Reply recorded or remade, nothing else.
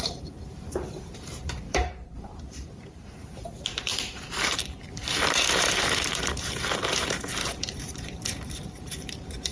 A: remade